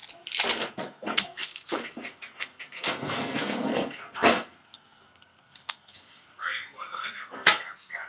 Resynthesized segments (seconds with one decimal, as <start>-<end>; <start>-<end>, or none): 0.6-8.1